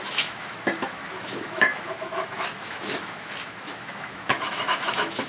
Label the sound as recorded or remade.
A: remade